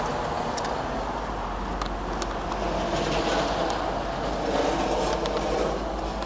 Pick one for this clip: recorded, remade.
recorded